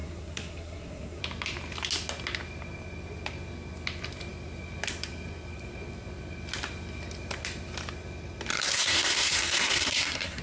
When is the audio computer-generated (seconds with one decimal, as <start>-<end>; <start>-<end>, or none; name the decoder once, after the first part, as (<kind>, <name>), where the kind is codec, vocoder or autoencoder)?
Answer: 0.0-1.2 (codec, SNAC); 8.5-10.4